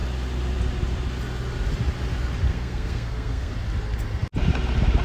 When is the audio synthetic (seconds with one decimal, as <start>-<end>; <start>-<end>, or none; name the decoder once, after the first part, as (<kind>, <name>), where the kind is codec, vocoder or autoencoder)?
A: 2.5-3.5 (codec, SNAC)